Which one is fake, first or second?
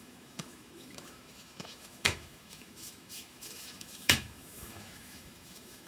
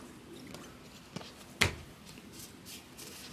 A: first